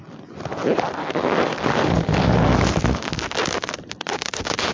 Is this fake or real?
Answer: real